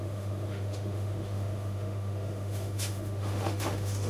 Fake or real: fake